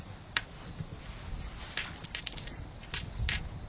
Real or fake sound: real